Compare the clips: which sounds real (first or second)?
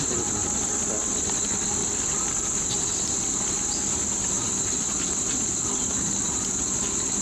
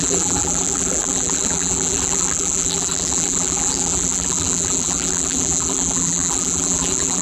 first